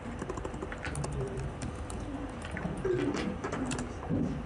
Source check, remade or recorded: recorded